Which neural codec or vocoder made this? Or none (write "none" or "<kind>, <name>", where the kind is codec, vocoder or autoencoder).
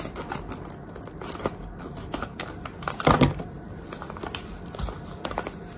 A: none